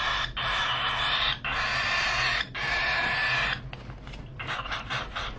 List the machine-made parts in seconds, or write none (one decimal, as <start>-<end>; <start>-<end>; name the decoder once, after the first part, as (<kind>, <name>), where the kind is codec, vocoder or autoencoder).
none